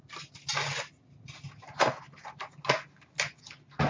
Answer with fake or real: real